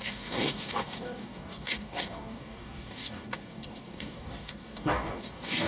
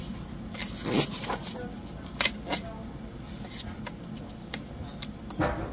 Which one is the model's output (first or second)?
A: first